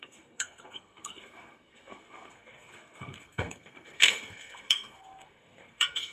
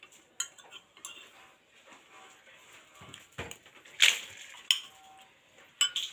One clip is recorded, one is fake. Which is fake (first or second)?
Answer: first